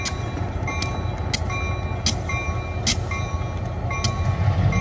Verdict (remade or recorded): recorded